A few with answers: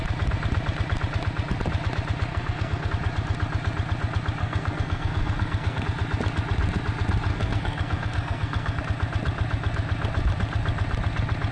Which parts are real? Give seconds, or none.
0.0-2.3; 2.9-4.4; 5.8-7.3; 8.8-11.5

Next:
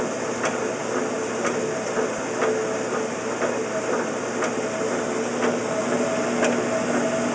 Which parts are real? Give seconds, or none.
0.0-7.3

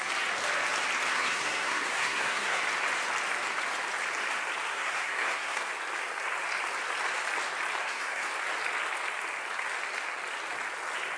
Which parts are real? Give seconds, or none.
0.0-1.1; 2.6-4.7; 5.7-7.8; 8.3-11.2

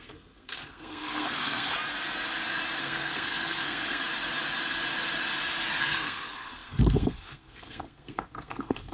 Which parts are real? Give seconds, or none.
1.7-2.8; 4.0-5.8

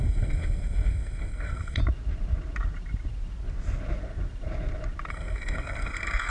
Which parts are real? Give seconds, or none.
1.8-5.1

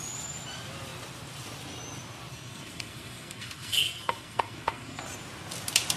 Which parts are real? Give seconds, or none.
0.0-2.3; 5.0-6.0

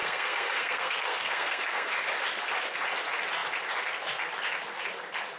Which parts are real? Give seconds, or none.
1.9-5.4